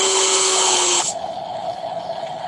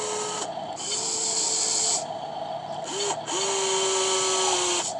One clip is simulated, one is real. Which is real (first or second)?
second